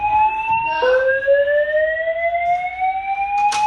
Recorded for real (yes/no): yes